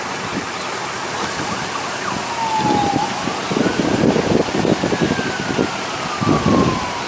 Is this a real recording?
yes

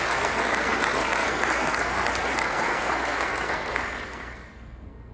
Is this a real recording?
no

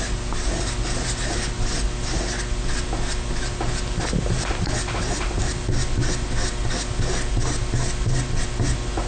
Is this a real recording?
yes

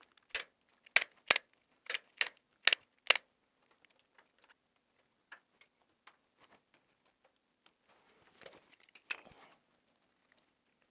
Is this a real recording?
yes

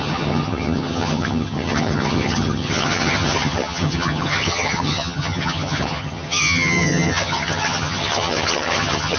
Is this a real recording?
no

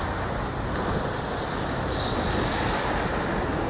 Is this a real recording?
yes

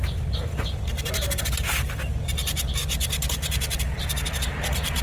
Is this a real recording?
yes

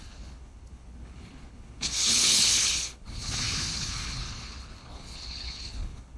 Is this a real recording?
no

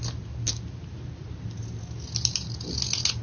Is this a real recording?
yes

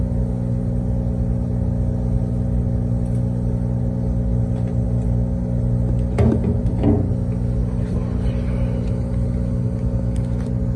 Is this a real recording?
yes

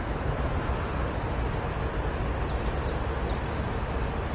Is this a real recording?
yes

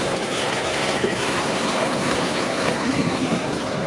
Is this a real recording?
no